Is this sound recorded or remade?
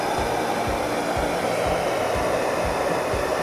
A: recorded